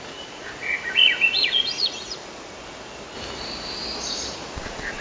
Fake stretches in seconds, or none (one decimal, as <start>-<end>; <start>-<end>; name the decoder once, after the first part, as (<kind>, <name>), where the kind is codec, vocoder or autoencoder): 0.0-2.2 (vocoder, Vocos); 4.3-5.0